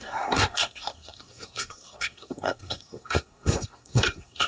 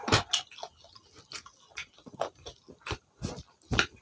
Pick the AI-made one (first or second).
first